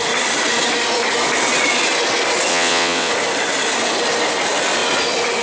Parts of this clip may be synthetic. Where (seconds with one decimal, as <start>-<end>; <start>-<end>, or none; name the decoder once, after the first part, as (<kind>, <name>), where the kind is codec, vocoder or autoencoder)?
2.5-3.1 (vocoder, WaveNeXt)